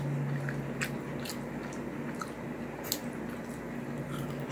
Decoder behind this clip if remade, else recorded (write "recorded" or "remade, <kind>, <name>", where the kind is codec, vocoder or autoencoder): recorded